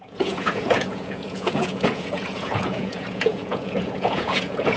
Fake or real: fake